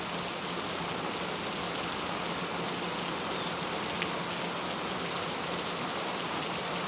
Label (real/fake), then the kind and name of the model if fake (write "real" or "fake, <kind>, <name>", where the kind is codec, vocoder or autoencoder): real